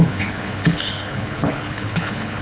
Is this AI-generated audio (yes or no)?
yes